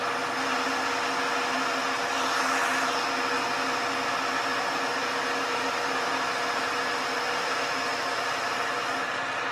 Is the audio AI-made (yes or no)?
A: no